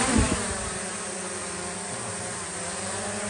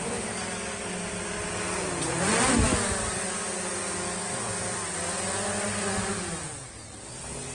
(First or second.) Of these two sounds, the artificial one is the first